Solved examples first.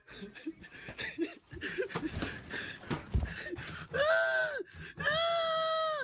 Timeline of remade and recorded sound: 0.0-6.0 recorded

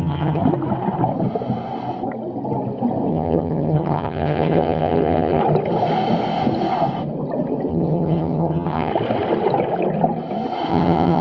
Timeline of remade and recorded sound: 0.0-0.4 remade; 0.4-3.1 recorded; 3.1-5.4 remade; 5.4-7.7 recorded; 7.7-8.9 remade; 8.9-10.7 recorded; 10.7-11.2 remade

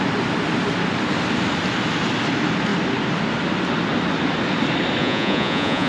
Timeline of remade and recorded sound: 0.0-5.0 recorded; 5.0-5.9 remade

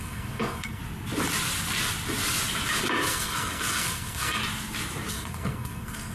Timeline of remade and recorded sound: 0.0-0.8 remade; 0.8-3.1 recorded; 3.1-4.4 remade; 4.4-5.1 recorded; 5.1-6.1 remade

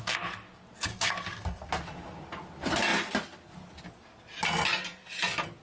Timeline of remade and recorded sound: 0.0-0.9 recorded; 0.9-1.7 remade; 1.7-5.6 recorded

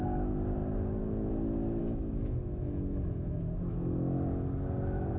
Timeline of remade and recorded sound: 0.0-1.8 recorded; 1.8-3.4 remade; 3.4-5.2 recorded

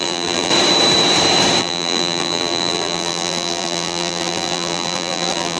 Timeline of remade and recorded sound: 0.0-0.5 remade; 0.5-1.6 recorded; 1.6-5.6 remade